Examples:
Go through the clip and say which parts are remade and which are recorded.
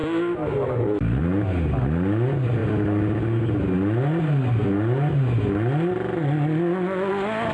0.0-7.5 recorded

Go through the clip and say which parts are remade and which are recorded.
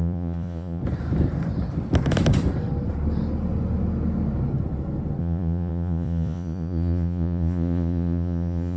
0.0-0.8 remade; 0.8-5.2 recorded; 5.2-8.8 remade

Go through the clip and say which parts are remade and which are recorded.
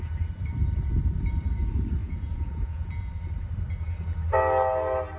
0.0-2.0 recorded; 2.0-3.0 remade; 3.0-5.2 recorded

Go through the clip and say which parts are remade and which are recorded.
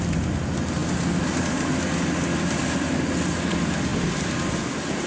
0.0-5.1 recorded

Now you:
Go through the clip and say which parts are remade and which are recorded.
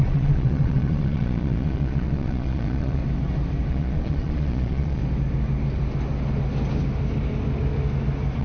0.0-3.0 remade; 3.0-3.7 recorded; 3.7-5.0 remade; 5.0-8.4 recorded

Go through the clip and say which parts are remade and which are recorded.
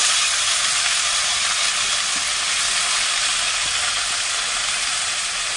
0.0-5.6 recorded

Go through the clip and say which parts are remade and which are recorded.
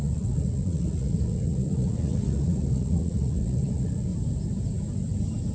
0.0-4.1 remade; 4.1-5.5 recorded